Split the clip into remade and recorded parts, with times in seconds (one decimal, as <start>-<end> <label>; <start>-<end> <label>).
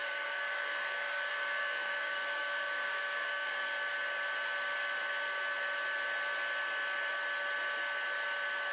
0.0-3.9 remade; 3.9-8.7 recorded